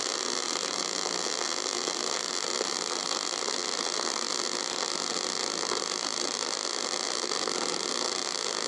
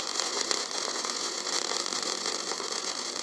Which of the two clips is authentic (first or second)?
first